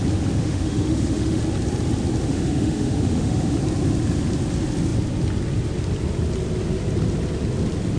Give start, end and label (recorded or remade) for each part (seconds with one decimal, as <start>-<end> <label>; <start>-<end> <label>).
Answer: 0.0-0.4 recorded; 0.4-1.4 remade; 1.4-2.3 recorded; 2.3-3.6 remade; 3.6-8.0 recorded